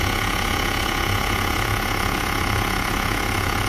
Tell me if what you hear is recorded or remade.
remade